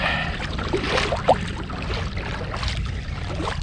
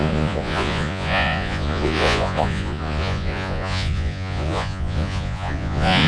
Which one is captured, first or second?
first